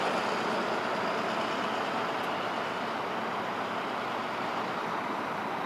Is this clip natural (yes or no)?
yes